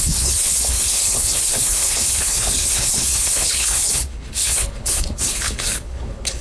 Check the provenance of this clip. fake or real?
fake